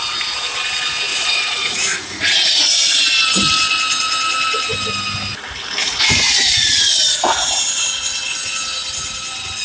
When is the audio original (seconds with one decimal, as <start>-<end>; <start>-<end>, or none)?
0.0-1.1; 3.0-5.8; 7.0-9.6